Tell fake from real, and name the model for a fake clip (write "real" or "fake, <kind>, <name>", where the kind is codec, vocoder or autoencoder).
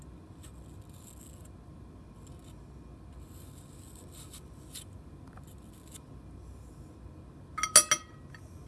real